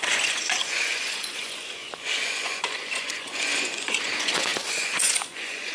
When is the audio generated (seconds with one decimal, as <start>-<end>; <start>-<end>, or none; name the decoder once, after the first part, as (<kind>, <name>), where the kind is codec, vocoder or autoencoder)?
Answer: 0.0-5.7 (vocoder, Vocos)